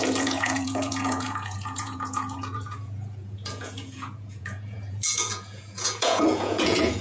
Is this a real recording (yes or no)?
no